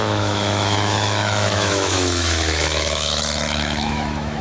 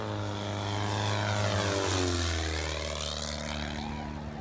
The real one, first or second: second